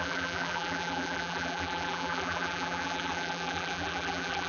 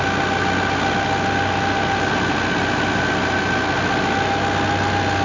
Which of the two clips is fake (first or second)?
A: first